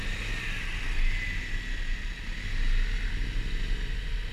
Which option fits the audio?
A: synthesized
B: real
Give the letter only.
B